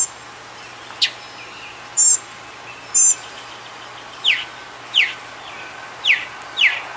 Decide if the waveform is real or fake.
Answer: real